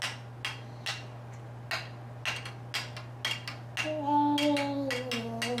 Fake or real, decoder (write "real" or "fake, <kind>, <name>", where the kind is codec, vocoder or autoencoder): real